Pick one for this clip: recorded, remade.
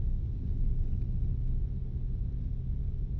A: recorded